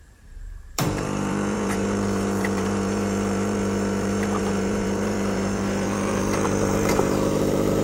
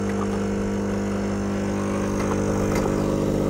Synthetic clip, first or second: first